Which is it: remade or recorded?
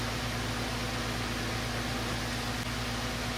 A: recorded